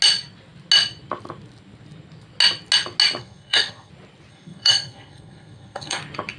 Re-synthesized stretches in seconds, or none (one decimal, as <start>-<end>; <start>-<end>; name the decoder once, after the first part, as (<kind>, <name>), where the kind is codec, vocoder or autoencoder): 3.2-3.9 (codec, SNAC); 4.3-6.0